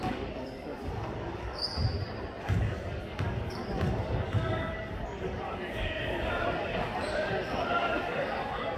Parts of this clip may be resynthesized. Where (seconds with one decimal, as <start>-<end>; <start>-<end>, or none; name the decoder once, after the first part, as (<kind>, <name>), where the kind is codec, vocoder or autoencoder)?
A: 0.0-1.7 (codec, DAC); 2.4-8.8